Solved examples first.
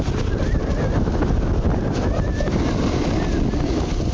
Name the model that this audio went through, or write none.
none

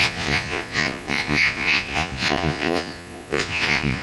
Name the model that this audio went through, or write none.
vocoder, Vocos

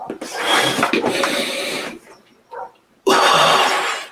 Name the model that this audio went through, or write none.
vocoder, BigVGAN v2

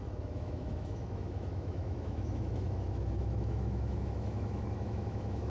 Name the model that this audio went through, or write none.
autoencoder, DAC-VAE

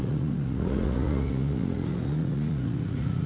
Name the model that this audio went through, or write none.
vocoder, Vocos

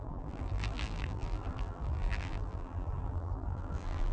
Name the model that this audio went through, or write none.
vocoder, BigVGAN v2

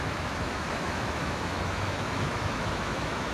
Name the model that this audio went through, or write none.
autoencoder, DAC-VAE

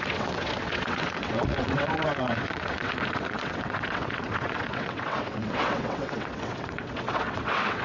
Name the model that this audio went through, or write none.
vocoder, WaveNeXt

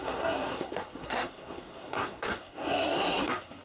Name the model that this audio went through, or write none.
codec, SNAC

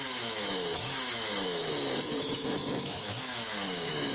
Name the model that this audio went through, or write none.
autoencoder, DAC-VAE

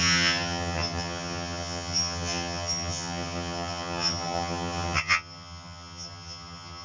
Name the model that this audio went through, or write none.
vocoder, HiFi-GAN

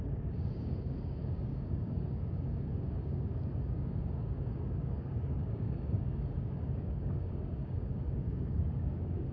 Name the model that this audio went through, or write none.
codec, DAC